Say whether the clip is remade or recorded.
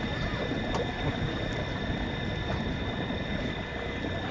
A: remade